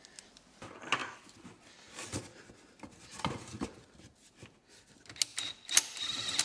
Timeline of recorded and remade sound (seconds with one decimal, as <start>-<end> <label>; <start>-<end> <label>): 0.0-6.4 recorded